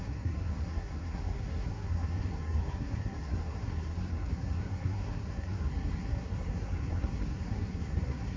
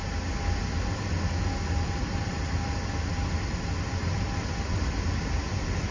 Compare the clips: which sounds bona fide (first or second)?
second